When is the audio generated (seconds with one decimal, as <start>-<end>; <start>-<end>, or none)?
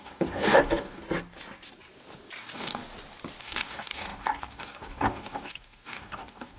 0.0-1.0; 2.4-2.8; 3.4-6.6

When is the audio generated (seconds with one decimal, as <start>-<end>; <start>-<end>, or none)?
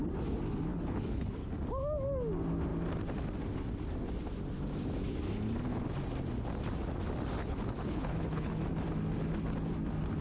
0.7-1.5; 7.4-8.6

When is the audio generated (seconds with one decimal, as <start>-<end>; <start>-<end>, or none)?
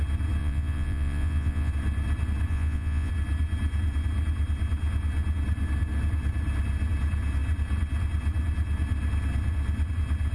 0.4-1.7; 2.5-3.1